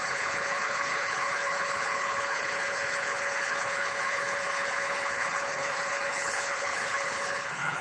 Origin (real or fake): fake